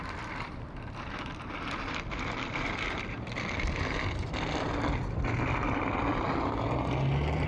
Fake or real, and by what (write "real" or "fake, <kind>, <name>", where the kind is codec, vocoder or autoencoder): fake, vocoder, BigVGAN v2